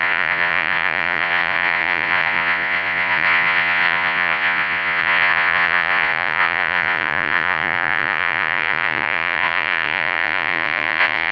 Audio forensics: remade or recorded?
remade